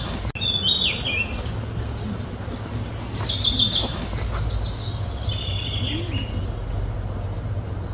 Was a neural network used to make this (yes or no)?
no